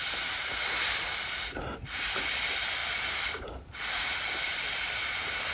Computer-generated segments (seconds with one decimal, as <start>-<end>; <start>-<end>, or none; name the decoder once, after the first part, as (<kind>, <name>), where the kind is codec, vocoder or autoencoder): none